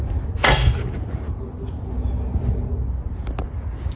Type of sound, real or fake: real